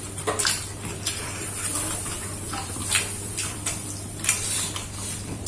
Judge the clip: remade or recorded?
remade